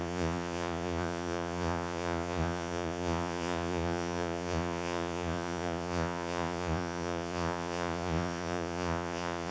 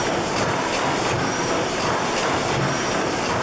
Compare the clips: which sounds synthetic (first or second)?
first